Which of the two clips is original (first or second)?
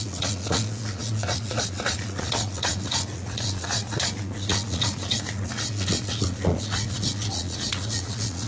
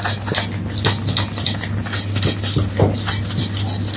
second